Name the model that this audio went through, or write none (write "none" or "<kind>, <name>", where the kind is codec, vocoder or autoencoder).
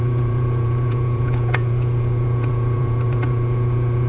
vocoder, Vocos